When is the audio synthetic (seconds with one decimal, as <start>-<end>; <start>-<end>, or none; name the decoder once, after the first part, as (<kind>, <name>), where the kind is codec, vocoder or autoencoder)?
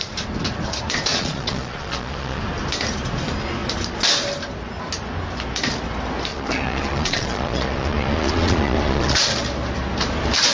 1.1-2.4 (vocoder, Vocos); 6.3-9.3